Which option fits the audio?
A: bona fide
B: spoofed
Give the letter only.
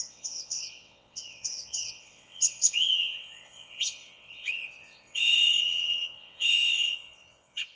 B